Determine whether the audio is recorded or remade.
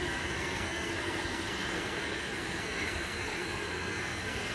remade